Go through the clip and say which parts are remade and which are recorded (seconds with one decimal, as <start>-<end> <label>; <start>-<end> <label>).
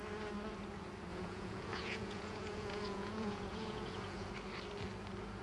0.0-1.1 recorded; 1.1-4.3 remade; 4.3-5.4 recorded